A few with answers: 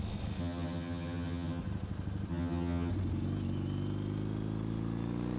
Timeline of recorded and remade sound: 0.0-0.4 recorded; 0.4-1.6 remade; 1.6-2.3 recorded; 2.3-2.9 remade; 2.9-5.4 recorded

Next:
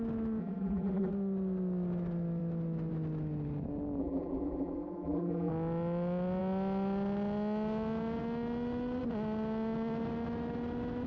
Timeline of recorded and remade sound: 0.0-0.4 recorded; 0.4-1.1 remade; 1.1-4.0 recorded; 4.0-5.5 remade; 5.5-11.1 recorded

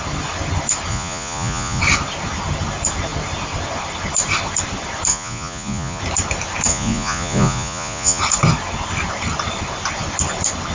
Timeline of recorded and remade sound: 0.0-0.9 recorded; 0.9-1.8 remade; 1.8-5.1 recorded; 5.1-6.0 remade; 6.0-6.7 recorded; 6.7-8.2 remade; 8.2-10.7 recorded

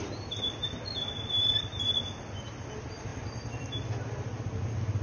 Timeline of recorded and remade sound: 0.0-5.0 recorded

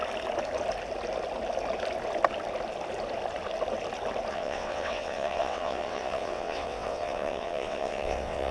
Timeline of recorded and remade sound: 0.0-4.3 recorded; 4.3-8.5 remade